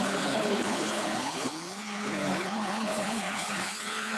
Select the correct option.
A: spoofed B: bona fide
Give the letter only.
A